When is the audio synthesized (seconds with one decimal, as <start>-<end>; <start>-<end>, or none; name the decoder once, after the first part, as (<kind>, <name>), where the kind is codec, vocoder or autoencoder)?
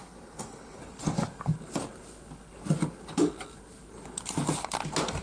0.0-0.8 (codec, HILCodec)